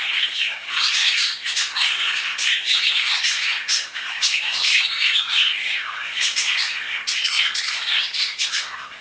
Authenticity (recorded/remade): remade